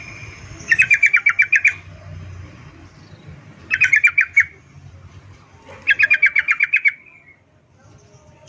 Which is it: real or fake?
real